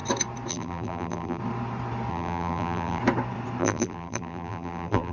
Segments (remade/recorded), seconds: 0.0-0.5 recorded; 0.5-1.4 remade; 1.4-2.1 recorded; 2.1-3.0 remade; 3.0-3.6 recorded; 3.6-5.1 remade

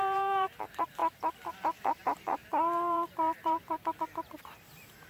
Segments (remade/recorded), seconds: 0.0-1.0 remade; 1.0-1.5 recorded; 1.5-5.1 remade